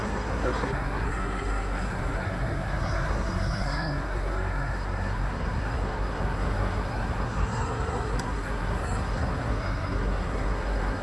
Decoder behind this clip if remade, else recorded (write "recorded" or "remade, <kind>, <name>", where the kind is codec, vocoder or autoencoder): remade, codec, SNAC